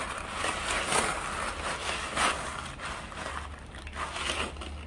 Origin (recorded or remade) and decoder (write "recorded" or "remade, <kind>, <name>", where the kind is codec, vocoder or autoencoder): recorded